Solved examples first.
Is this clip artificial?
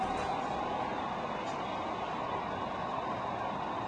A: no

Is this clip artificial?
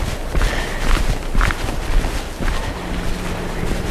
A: no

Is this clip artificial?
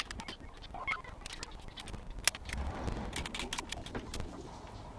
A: no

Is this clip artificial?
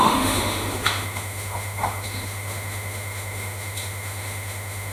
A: yes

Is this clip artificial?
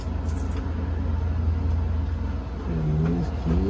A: no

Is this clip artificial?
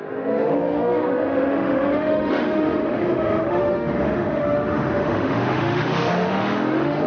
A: yes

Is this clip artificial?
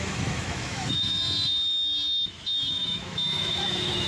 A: yes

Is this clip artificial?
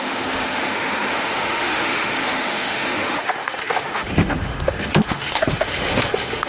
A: yes